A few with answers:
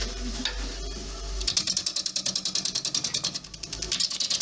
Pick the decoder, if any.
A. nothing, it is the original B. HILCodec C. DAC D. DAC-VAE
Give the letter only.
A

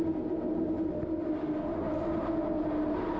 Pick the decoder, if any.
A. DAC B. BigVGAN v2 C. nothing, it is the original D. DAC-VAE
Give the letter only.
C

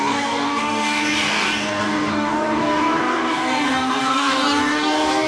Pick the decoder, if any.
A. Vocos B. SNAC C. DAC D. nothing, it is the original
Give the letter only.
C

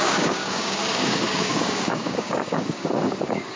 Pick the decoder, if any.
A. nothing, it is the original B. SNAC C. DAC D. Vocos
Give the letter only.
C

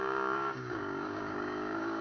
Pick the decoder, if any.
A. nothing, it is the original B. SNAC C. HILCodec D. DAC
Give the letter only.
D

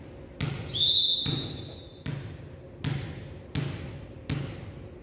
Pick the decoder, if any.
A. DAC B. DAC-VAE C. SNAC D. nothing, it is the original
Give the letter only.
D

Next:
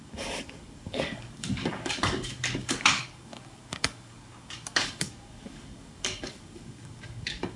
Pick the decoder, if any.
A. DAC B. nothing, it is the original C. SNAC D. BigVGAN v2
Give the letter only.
A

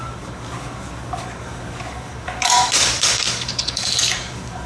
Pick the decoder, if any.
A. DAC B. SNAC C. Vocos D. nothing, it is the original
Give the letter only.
A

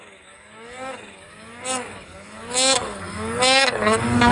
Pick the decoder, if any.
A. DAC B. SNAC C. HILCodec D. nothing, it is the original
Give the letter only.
A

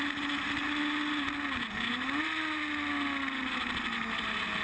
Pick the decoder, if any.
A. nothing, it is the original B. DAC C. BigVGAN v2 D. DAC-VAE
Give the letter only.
A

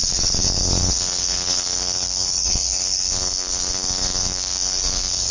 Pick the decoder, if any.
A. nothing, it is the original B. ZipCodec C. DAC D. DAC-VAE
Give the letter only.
C